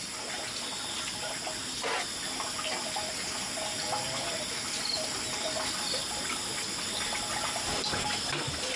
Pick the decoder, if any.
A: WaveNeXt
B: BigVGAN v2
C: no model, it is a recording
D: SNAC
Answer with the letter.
C